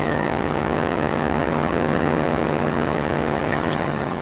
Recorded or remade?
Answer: remade